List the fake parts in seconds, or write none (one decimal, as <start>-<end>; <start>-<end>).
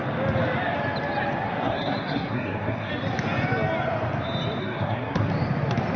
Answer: 1.4-2.9; 4.6-5.3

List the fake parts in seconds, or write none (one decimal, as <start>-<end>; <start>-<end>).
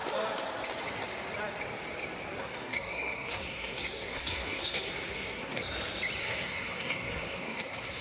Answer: 2.4-5.6; 6.2-8.0